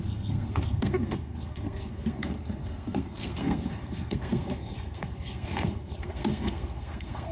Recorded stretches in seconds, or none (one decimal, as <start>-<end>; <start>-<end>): none